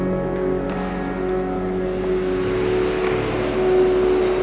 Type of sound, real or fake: real